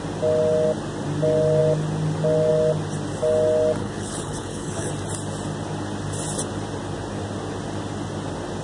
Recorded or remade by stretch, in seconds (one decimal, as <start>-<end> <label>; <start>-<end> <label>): 0.0-3.8 recorded; 3.8-4.9 remade; 4.9-8.6 recorded